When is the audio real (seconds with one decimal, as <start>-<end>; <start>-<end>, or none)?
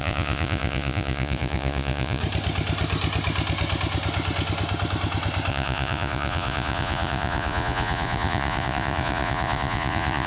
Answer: 2.2-5.5